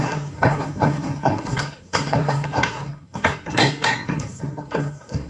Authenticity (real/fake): fake